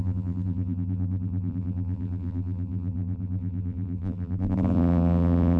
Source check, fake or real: fake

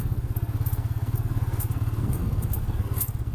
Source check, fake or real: fake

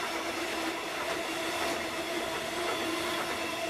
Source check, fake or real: real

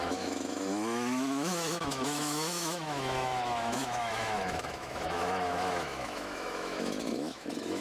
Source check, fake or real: fake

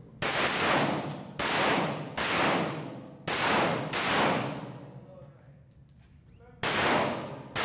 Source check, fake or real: real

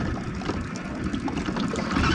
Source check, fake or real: real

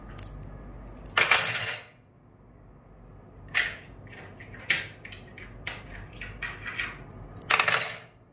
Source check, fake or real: real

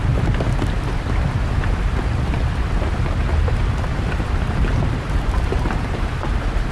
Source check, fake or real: real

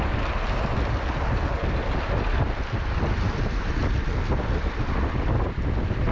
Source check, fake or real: real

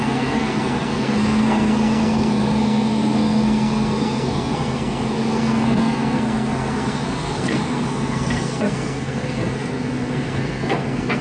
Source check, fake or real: fake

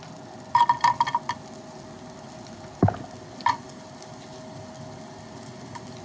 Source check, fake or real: real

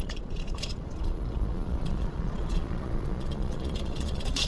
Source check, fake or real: fake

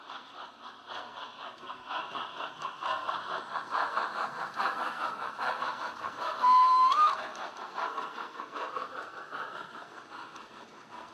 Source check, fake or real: fake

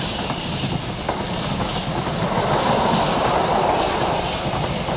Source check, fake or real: real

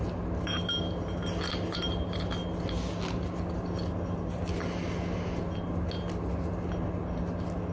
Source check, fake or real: real